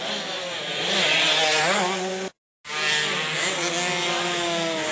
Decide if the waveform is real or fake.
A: real